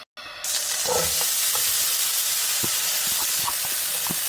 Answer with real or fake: real